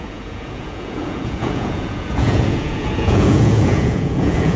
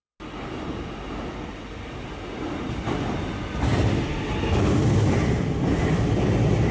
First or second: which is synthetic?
first